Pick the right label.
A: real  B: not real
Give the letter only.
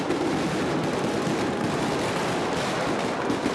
A